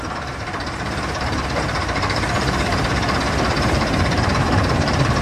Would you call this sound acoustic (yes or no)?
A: no